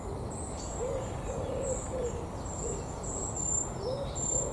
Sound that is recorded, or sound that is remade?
recorded